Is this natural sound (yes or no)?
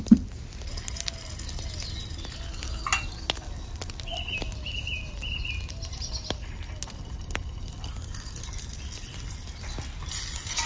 yes